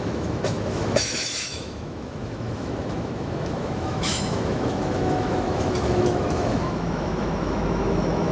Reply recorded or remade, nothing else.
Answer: remade